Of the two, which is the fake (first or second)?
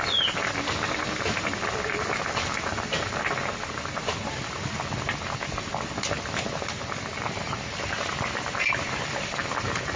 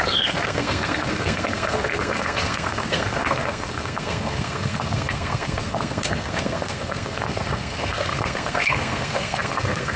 second